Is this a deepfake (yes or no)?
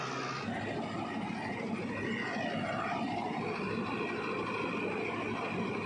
no